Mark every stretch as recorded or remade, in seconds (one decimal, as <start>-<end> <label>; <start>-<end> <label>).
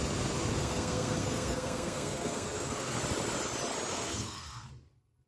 0.0-0.6 recorded; 0.6-3.0 remade; 3.0-3.9 recorded; 3.9-4.7 remade; 4.7-5.3 recorded